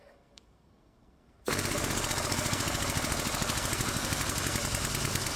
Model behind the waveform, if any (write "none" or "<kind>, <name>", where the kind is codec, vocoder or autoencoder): codec, SNAC